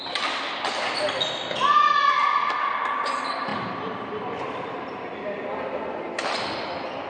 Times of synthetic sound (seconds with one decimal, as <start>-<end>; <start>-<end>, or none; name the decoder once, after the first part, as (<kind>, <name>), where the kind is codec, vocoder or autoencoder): none